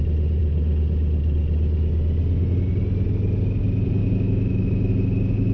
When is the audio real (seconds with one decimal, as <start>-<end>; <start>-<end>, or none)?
0.0-4.0; 4.9-5.5